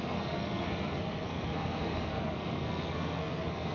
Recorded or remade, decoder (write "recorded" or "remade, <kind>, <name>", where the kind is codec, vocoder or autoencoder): remade, codec, SNAC